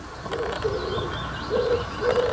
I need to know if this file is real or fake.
real